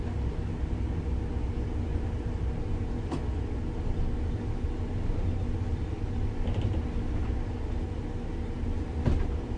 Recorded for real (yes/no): yes